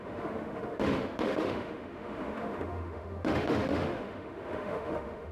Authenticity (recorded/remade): remade